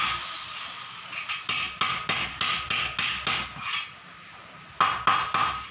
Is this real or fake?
real